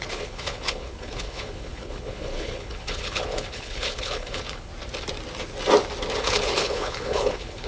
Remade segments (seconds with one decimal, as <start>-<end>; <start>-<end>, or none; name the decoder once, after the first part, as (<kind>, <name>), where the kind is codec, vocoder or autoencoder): 0.0-4.7 (codec, HILCodec); 6.2-7.7